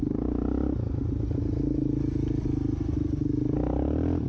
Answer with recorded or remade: recorded